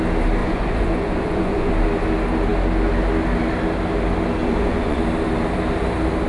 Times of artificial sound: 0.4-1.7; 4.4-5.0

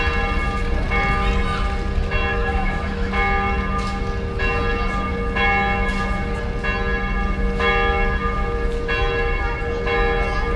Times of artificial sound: 2.3-3.1

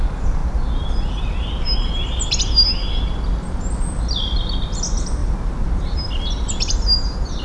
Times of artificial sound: 5.2-6.1

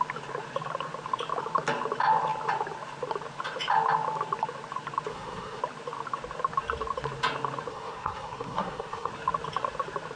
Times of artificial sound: 5.1-5.6; 7.7-9.1

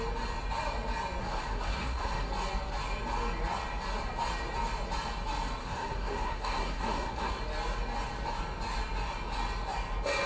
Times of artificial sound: 1.2-2.3; 5.6-7.3

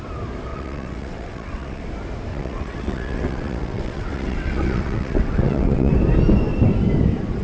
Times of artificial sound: 0.5-1.8; 2.3-5.9